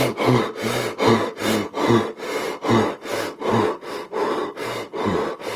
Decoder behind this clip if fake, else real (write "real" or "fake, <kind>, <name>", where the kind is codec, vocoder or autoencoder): real